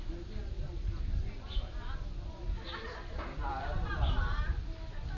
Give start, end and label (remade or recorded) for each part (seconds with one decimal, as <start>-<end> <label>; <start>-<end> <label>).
0.0-2.8 recorded; 2.8-3.9 remade; 3.9-5.2 recorded